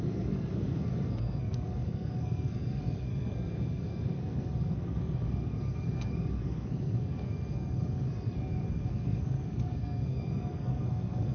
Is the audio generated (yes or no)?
yes